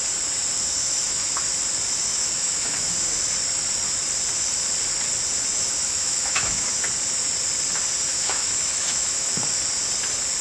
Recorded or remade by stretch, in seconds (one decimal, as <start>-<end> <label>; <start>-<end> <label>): 0.0-0.8 recorded; 0.8-1.3 remade; 1.3-2.1 recorded; 2.1-2.9 remade; 2.9-5.5 recorded; 5.5-6.7 remade; 6.7-8.1 recorded; 8.1-9.4 remade; 9.4-10.4 recorded